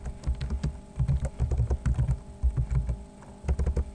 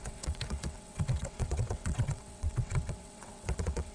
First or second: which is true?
first